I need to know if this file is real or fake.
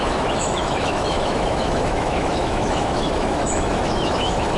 fake